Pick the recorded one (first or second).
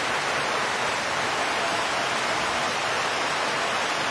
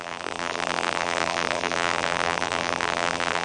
first